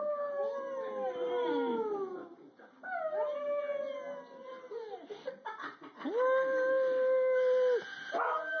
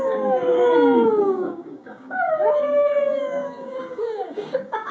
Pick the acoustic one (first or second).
first